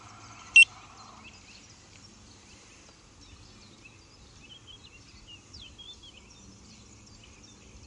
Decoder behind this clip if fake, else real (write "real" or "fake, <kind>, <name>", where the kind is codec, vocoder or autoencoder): real